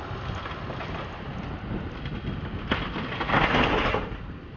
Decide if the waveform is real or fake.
real